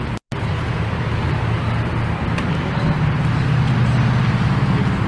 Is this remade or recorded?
recorded